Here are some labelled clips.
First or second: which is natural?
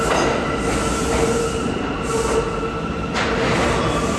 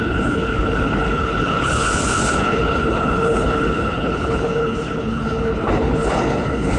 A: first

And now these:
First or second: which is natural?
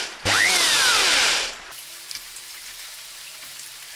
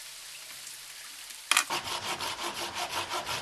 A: second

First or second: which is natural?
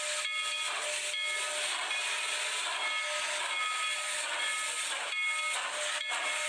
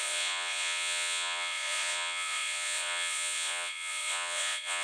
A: first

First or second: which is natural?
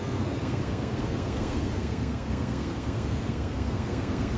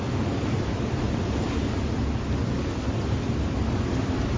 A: second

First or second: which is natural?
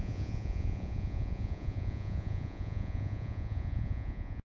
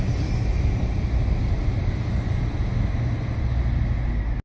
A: second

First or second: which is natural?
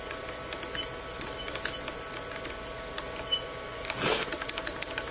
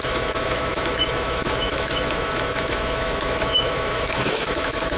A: first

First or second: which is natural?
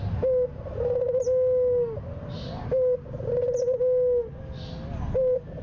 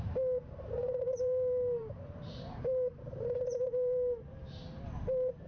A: first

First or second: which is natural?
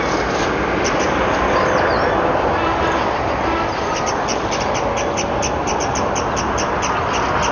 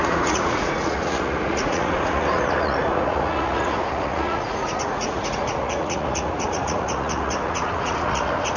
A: first